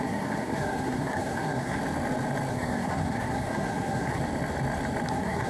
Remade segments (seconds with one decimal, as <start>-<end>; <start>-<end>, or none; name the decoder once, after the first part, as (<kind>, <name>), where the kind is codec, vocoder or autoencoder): 0.0-1.8 (codec, SNAC); 2.5-4.2; 5.1-5.5